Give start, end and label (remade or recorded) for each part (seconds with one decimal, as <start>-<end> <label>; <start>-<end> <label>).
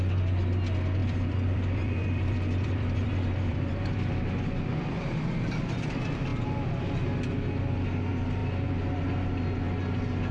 0.0-1.0 recorded; 1.0-3.1 remade; 3.1-3.5 recorded; 3.5-4.2 remade; 4.2-10.3 recorded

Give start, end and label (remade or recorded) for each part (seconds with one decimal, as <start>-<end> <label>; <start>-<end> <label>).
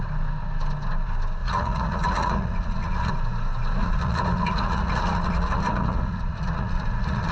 0.0-1.4 recorded; 1.4-3.1 remade; 3.1-3.8 recorded; 3.8-7.3 remade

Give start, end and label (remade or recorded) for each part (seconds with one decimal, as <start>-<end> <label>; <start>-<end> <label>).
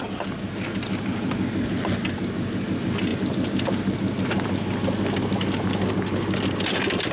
0.0-7.1 recorded